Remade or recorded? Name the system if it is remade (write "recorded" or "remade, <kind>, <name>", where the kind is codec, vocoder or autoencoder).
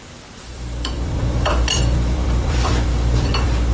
remade, vocoder, BigVGAN v2